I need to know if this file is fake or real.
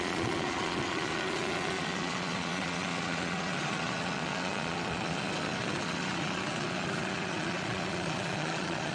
fake